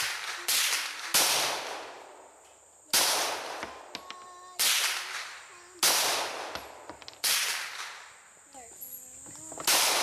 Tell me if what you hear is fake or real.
real